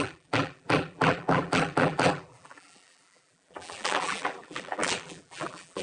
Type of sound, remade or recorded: remade